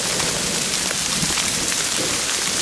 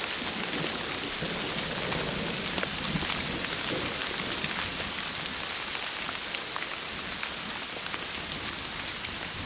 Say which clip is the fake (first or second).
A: first